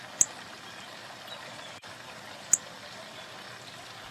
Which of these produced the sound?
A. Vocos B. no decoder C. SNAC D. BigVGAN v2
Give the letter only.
D